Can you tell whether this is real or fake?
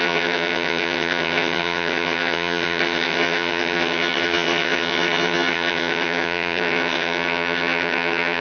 fake